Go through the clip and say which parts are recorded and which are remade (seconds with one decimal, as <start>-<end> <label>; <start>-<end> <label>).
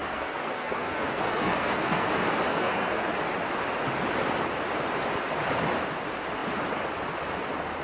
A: 0.0-2.1 remade; 2.1-2.5 recorded; 2.5-3.0 remade; 3.0-7.8 recorded